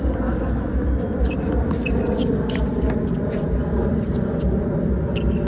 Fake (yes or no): no